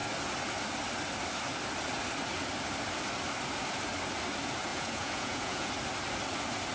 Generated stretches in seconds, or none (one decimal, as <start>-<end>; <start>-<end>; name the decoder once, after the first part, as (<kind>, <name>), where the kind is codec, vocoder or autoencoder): 4.7-5.7 (vocoder, Vocos)

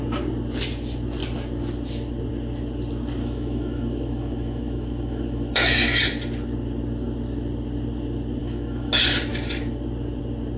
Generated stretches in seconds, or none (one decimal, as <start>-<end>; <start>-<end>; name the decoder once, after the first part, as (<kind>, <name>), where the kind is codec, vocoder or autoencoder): 3.2-6.0 (autoencoder, DAC-VAE); 8.4-8.9

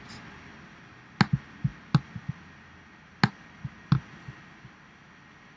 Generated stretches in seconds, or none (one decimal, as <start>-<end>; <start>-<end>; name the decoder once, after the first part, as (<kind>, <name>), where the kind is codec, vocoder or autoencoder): none

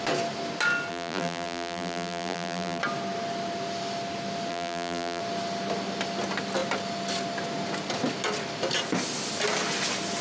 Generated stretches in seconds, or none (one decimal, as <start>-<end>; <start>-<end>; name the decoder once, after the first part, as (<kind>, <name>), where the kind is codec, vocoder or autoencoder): 0.9-2.8 (vocoder, BigVGAN v2); 4.5-5.2